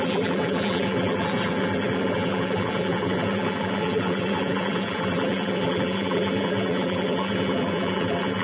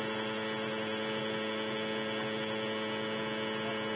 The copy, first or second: first